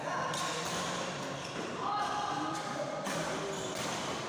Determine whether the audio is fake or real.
real